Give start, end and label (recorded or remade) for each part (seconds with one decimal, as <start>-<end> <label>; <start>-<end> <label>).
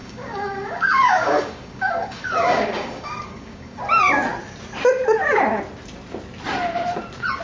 0.0-3.8 remade; 3.8-7.4 recorded